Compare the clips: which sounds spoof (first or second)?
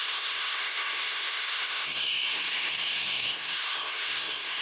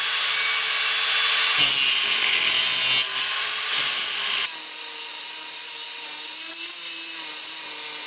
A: first